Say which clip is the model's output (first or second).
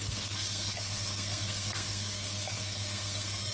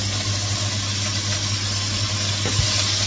first